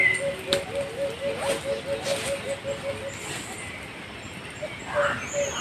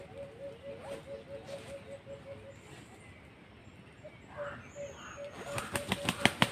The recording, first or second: second